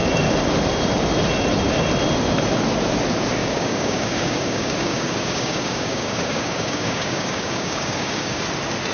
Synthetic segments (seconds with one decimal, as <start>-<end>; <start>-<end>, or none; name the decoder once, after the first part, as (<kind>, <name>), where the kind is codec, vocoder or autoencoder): 3.4-8.4 (codec, DAC)